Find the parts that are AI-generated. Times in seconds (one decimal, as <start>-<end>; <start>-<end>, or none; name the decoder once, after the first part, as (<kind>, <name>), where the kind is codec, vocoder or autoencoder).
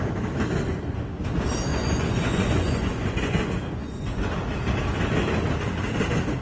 1.7-4.3 (vocoder, Vocos)